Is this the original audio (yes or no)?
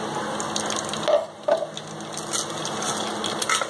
yes